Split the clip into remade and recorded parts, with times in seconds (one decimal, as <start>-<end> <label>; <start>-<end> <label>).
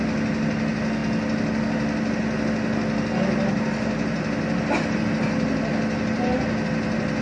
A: 0.0-7.2 recorded